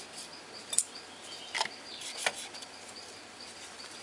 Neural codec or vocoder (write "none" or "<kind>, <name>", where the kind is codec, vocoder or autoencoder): vocoder, BigVGAN v2